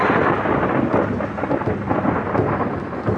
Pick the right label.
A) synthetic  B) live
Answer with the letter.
B